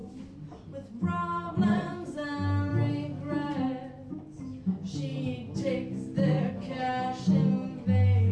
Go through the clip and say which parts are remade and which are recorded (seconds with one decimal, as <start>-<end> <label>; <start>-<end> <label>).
0.0-8.3 recorded